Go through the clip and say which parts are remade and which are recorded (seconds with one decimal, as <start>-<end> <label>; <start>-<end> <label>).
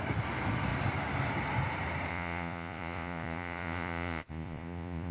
0.0-2.1 recorded; 2.1-5.1 remade